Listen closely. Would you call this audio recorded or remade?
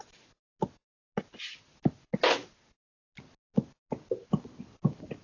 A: recorded